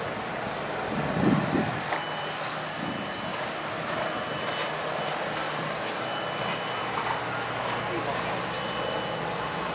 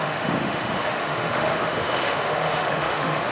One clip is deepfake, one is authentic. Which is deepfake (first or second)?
second